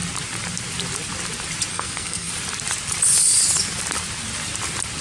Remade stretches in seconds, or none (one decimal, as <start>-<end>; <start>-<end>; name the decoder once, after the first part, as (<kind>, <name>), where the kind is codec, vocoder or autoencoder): 1.7-2.3 (codec, SNAC)